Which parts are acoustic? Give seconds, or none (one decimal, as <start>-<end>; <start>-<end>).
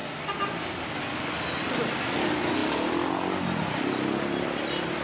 0.0-5.0